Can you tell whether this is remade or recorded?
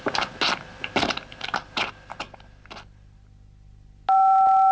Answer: recorded